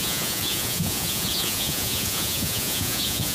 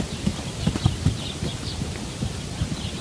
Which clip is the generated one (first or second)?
first